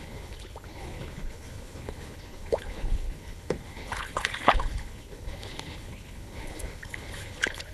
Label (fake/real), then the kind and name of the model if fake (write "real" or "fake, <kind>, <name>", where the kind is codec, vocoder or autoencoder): fake, codec, HILCodec